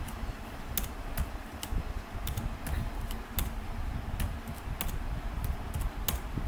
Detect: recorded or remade recorded